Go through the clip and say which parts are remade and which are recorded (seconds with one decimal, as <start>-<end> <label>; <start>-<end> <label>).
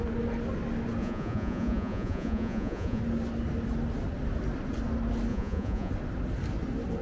0.0-1.0 recorded; 1.0-3.0 remade; 3.0-5.3 recorded; 5.3-5.9 remade; 5.9-7.0 recorded